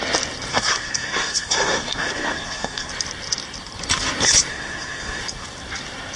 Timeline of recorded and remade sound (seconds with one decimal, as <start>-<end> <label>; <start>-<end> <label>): 0.0-0.5 recorded; 0.5-2.9 remade; 2.9-4.5 recorded; 4.5-5.2 remade; 5.2-6.2 recorded